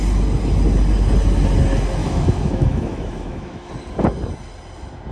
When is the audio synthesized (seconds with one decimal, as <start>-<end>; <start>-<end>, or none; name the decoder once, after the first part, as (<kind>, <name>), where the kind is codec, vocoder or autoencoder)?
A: 2.0-3.7 (autoencoder, DAC-VAE)